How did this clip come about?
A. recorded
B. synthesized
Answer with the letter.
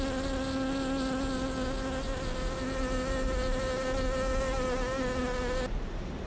A